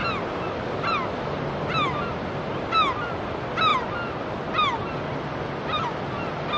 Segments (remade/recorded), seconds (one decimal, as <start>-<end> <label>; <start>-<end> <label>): 0.0-6.6 recorded

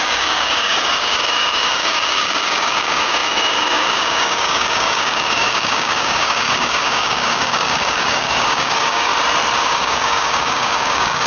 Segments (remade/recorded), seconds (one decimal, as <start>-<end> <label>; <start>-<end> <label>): 0.0-9.1 remade; 9.1-9.6 recorded; 9.6-11.3 remade

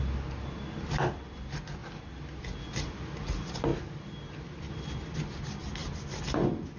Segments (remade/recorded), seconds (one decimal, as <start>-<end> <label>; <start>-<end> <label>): 0.0-6.8 recorded

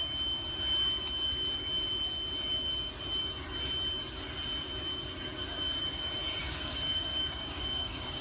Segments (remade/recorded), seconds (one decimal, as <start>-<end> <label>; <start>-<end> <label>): 0.0-6.4 recorded; 6.4-8.2 remade

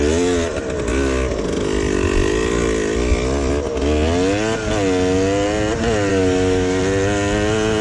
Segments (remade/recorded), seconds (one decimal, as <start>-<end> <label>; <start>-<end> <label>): 0.0-6.1 recorded; 6.1-6.8 remade; 6.8-7.8 recorded

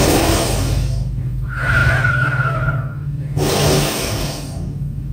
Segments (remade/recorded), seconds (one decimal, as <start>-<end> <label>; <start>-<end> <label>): 0.0-5.1 remade

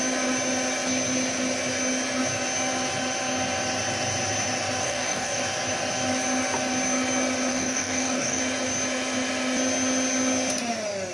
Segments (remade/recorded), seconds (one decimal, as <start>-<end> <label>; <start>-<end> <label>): 0.0-4.8 recorded; 4.8-5.4 remade; 5.4-7.5 recorded; 7.5-8.4 remade; 8.4-11.1 recorded